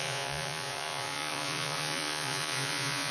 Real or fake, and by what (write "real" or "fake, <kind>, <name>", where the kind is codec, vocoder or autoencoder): fake, vocoder, Vocos